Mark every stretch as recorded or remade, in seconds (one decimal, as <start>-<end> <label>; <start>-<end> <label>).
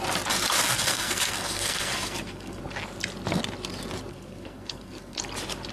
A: 0.0-0.6 recorded; 0.6-2.6 remade; 2.6-4.1 recorded; 4.1-5.2 remade; 5.2-5.7 recorded